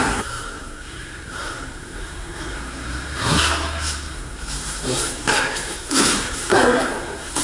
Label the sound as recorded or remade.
remade